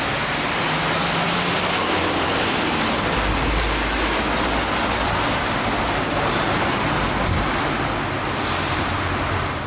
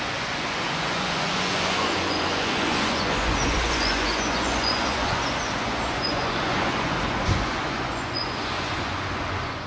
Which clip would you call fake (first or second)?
second